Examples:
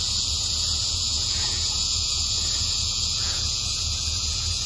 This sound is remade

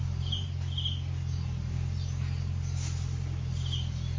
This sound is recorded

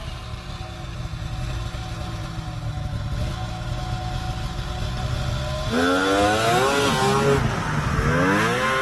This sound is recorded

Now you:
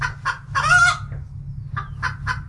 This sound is recorded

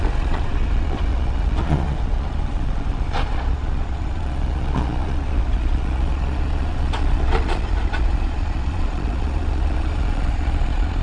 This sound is remade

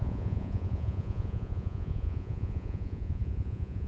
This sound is remade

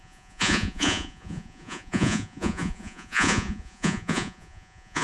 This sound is remade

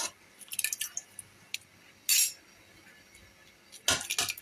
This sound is recorded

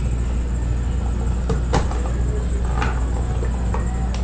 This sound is recorded